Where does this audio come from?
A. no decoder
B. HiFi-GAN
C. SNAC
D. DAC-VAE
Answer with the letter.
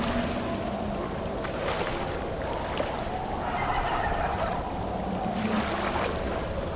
A